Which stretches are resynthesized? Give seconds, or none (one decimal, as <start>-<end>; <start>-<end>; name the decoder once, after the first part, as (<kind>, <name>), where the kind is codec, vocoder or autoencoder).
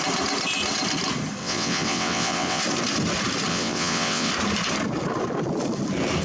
1.4-2.6 (vocoder, WaveNeXt); 3.5-4.3